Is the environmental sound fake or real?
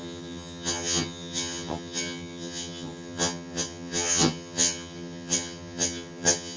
fake